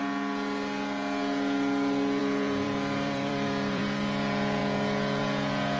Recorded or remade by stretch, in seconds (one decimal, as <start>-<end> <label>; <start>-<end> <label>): 0.0-2.2 recorded; 2.2-3.8 remade; 3.8-5.8 recorded